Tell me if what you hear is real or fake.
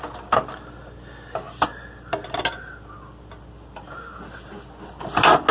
real